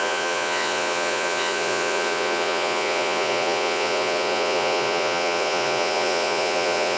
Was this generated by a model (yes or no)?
yes